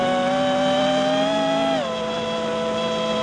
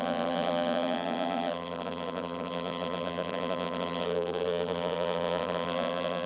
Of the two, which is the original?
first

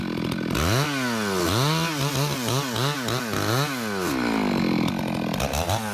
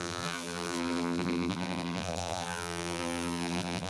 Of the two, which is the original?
first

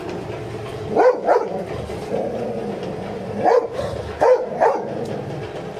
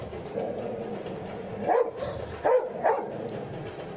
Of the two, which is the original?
first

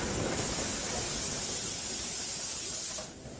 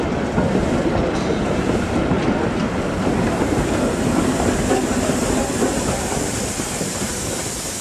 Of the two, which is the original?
first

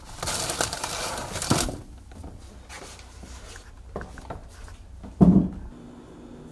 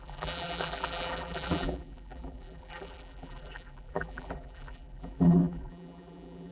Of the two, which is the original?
first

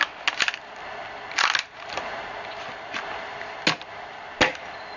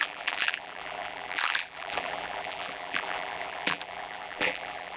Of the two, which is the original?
first